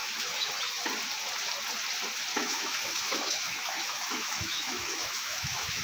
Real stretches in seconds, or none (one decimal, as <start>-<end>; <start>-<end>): 0.5-2.3